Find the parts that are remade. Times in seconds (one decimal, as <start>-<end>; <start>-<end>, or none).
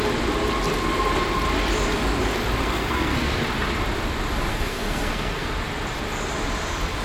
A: 2.6-3.4; 4.5-5.5